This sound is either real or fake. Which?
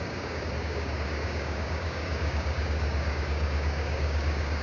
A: fake